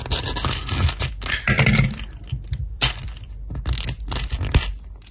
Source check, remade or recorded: recorded